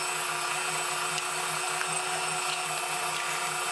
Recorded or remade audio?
recorded